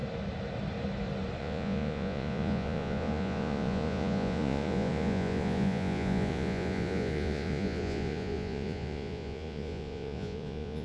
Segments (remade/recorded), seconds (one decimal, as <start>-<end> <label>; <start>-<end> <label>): 0.0-1.4 recorded; 1.4-10.8 remade